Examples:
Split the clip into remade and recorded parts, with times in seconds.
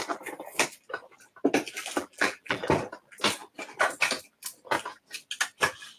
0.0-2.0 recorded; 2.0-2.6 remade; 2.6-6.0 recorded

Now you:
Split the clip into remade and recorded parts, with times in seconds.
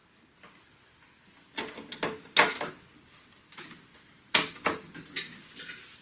0.0-6.0 recorded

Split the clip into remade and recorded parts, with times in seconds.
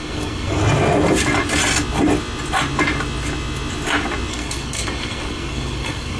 0.0-0.6 remade; 0.6-4.3 recorded; 4.3-6.2 remade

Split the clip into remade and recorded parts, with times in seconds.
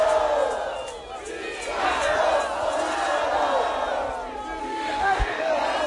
0.0-4.6 recorded; 4.6-5.5 remade; 5.5-5.9 recorded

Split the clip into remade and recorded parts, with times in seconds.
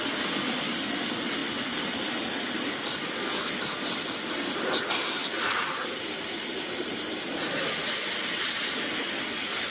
0.0-9.7 recorded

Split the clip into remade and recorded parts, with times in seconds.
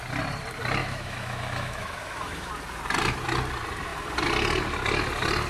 0.0-0.8 recorded; 0.8-2.5 remade; 2.5-5.5 recorded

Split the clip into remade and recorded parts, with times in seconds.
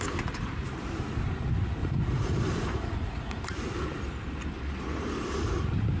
0.0-1.8 recorded; 1.8-3.4 remade; 3.4-6.0 recorded